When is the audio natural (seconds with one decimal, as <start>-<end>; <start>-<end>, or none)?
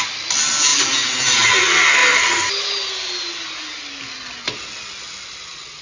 0.0-5.8